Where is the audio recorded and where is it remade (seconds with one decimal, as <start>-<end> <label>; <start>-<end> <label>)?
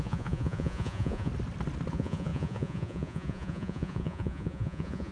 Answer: 0.0-1.3 remade; 1.3-1.9 recorded; 1.9-5.1 remade